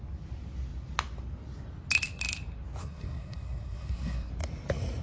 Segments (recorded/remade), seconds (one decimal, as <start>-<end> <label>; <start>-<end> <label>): 0.0-2.8 recorded; 2.8-4.3 remade; 4.3-5.0 recorded